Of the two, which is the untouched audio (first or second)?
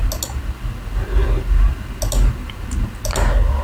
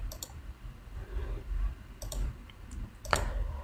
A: first